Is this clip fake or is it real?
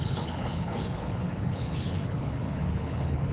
fake